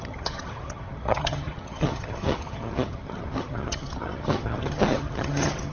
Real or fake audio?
fake